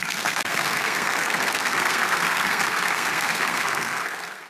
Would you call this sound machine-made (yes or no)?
yes